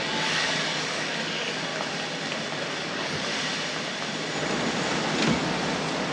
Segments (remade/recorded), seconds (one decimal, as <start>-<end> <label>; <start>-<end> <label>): 0.0-1.7 remade; 1.7-2.7 recorded; 2.7-3.3 remade; 3.3-6.1 recorded